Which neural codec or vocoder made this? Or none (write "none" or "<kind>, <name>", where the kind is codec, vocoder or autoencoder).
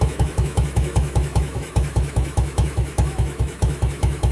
autoencoder, DAC-VAE